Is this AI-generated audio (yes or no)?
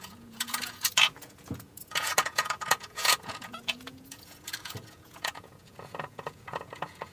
yes